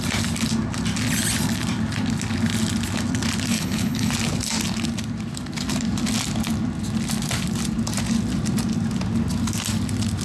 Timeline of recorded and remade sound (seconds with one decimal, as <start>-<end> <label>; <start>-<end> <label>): 0.0-3.5 recorded; 3.5-4.1 remade; 4.1-10.2 recorded